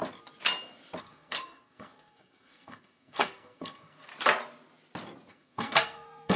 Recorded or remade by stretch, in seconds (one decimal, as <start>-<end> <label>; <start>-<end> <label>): 0.0-1.0 recorded; 1.0-4.1 remade; 4.1-5.3 recorded; 5.3-6.4 remade